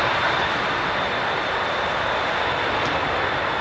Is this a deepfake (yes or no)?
no